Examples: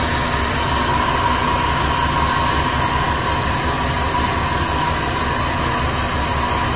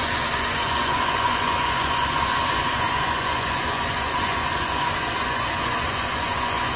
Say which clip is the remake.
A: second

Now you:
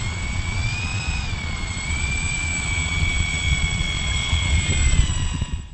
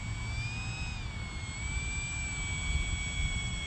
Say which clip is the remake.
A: first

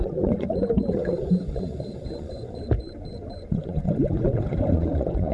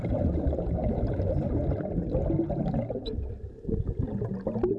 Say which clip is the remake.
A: first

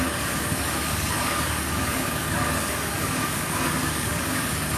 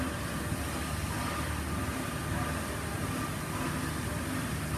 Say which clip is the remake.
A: first